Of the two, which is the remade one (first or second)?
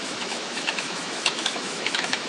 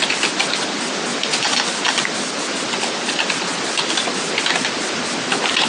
first